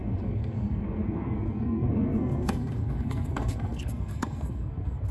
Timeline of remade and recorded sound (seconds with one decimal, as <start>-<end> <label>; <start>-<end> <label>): 0.0-5.1 remade